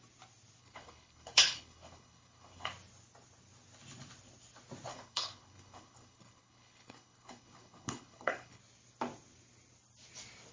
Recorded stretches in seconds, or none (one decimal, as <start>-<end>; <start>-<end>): 0.0-0.6; 2.7-4.9; 8.6-10.5